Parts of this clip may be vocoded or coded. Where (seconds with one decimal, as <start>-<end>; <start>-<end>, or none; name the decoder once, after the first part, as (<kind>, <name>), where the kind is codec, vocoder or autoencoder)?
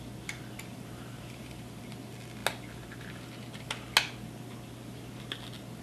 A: 0.7-1.8 (vocoder, BigVGAN v2)